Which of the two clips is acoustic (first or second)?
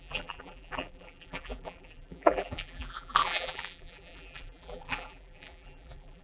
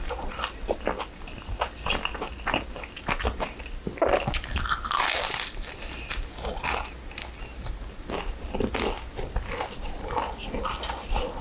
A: second